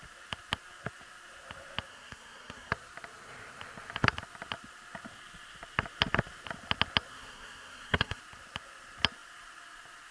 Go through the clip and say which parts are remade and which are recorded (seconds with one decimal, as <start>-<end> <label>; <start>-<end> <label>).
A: 0.0-1.9 recorded; 1.9-2.7 remade; 2.7-7.1 recorded; 7.1-8.2 remade; 8.2-10.1 recorded